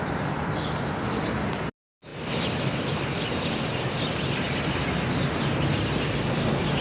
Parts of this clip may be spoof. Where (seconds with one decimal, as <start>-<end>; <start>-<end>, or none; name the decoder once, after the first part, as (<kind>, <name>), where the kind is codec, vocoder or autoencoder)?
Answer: none